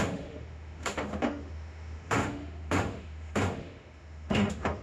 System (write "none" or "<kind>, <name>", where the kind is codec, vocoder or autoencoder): autoencoder, DAC-VAE